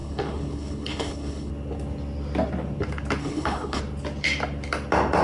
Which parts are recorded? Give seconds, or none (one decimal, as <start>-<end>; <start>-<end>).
1.5-3.2; 3.8-5.2